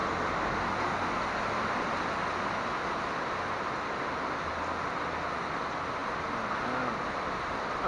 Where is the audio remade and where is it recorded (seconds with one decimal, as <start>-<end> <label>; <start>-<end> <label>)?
0.0-7.9 recorded